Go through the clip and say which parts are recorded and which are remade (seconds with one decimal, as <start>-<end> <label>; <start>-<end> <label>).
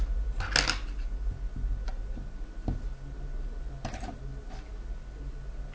0.0-5.7 recorded